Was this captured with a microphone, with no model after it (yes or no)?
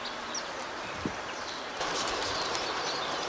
no